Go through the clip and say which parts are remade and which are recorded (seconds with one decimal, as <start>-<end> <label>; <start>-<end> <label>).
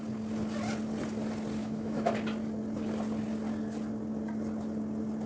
0.0-1.6 recorded; 1.6-2.1 remade; 2.1-5.3 recorded